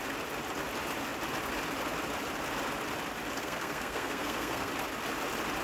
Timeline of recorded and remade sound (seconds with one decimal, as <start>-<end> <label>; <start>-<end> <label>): 0.0-3.4 recorded; 3.4-4.7 remade; 4.7-5.6 recorded